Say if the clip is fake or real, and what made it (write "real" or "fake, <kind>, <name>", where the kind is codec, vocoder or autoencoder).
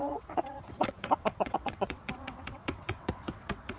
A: fake, vocoder, WaveNeXt